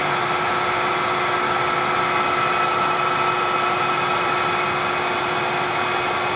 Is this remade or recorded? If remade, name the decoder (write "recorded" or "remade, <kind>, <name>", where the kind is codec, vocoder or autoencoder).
recorded